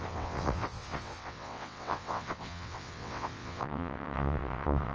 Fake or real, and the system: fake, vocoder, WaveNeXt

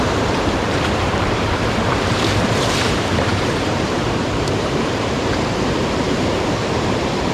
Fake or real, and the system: fake, vocoder, BigVGAN v2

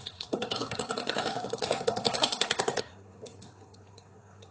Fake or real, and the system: fake, codec, SNAC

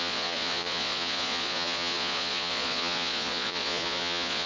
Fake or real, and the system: fake, vocoder, Vocos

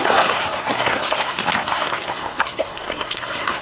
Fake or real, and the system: fake, codec, SNAC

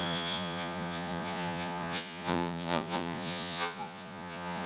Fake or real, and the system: fake, vocoder, Vocos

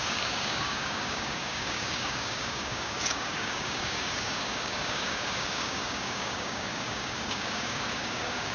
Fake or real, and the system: fake, codec, DAC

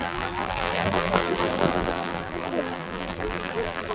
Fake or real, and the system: fake, vocoder, BigVGAN v2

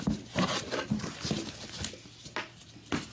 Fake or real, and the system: real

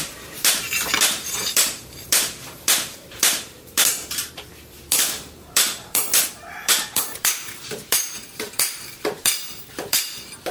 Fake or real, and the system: fake, vocoder, BigVGAN v2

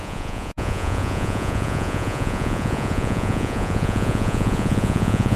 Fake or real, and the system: fake, vocoder, Vocos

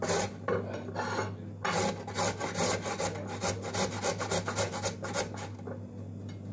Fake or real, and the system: real